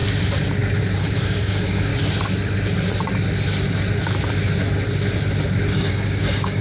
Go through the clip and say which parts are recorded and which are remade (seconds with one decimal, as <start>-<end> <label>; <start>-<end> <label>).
0.0-1.0 recorded; 1.0-1.9 remade; 1.9-5.9 recorded; 5.9-6.6 remade